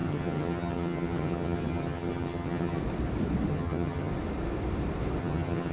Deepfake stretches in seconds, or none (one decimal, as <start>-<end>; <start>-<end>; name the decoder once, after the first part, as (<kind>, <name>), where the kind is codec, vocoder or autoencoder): 0.0-2.8 (vocoder, HiFi-GAN); 3.5-4.1; 5.2-5.7